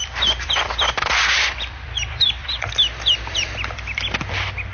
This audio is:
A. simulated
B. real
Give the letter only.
A